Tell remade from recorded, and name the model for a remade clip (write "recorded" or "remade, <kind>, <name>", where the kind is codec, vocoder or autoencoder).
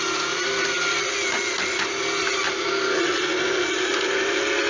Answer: recorded